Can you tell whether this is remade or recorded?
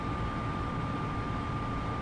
recorded